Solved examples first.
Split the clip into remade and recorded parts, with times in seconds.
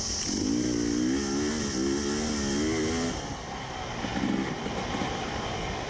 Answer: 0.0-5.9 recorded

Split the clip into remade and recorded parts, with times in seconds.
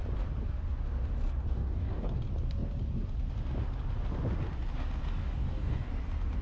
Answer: 0.0-1.5 recorded; 1.5-2.2 remade; 2.2-5.2 recorded; 5.2-5.9 remade; 5.9-6.4 recorded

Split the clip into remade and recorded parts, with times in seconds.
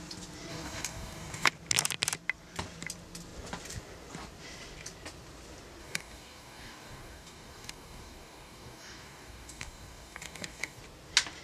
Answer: 0.0-0.5 recorded; 0.5-1.5 remade; 1.5-5.8 recorded; 5.8-10.8 remade; 10.8-11.4 recorded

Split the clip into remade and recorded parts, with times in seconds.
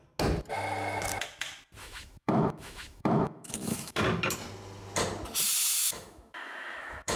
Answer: 0.0-1.8 recorded; 1.8-4.0 remade; 4.0-5.8 recorded; 5.8-7.2 remade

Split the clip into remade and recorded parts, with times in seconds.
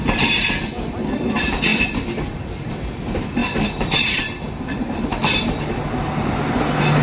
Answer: 0.0-3.4 recorded; 3.4-4.2 remade; 4.2-5.1 recorded; 5.1-5.7 remade; 5.7-7.0 recorded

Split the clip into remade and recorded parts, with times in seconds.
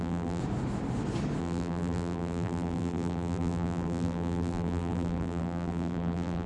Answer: 0.0-0.4 remade; 0.4-1.4 recorded; 1.4-6.5 remade